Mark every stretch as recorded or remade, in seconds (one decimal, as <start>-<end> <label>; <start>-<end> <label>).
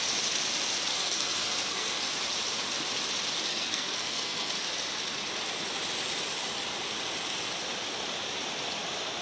0.0-0.9 recorded; 0.9-2.1 remade; 2.1-3.5 recorded; 3.5-4.5 remade; 4.5-9.2 recorded